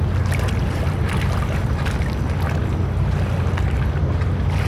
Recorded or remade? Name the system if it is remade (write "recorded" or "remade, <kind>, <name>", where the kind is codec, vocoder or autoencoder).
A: recorded